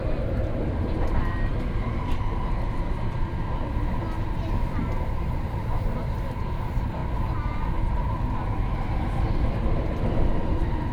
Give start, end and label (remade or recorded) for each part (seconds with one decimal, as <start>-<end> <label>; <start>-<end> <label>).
0.0-10.9 recorded